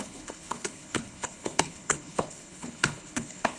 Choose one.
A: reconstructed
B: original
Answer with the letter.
A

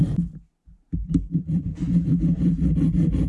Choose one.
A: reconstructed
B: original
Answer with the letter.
B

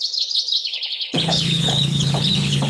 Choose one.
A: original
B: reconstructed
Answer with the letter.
B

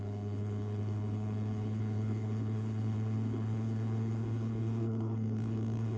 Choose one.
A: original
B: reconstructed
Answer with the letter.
B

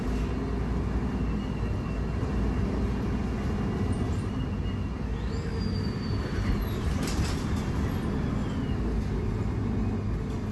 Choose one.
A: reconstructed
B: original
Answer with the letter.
B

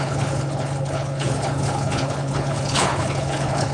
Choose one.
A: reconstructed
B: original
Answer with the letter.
A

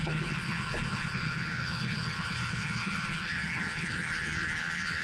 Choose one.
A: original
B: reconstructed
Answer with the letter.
B